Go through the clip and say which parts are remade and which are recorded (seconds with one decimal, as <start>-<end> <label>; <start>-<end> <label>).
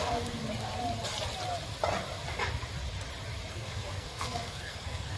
0.0-0.4 remade; 0.4-3.5 recorded; 3.5-5.2 remade